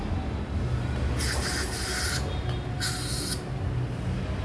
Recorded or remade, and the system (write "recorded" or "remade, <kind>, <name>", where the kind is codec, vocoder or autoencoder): recorded